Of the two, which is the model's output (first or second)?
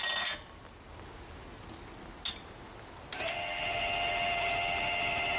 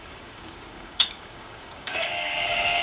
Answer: second